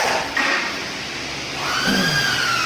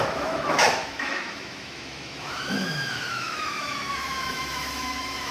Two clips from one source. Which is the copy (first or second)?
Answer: second